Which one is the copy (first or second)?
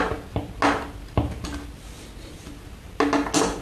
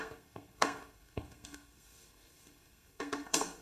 second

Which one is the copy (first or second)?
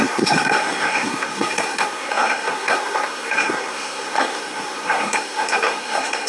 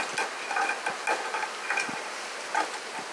first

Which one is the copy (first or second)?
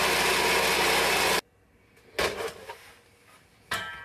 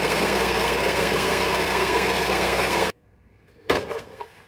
second